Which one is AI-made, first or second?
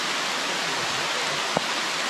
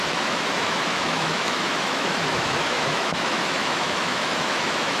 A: second